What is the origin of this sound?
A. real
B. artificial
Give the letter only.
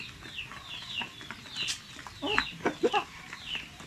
A